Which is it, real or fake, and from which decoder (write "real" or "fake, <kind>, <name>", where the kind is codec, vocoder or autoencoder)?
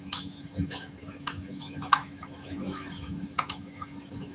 fake, autoencoder, DAC-VAE